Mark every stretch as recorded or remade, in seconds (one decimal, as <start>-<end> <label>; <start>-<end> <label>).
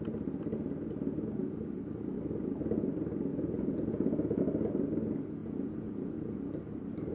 0.0-3.3 recorded; 3.3-4.4 remade; 4.4-5.4 recorded; 5.4-6.4 remade; 6.4-7.1 recorded